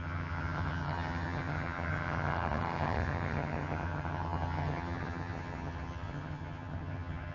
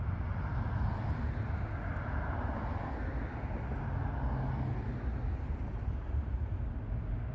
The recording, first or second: second